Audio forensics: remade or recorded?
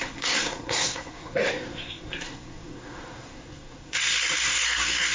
remade